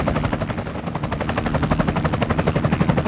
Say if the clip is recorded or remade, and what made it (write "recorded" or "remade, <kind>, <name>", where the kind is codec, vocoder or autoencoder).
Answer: recorded